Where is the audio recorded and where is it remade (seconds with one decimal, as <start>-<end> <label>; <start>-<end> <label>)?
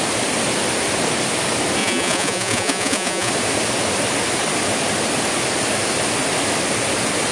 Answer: 0.0-1.8 recorded; 1.8-3.3 remade; 3.3-7.3 recorded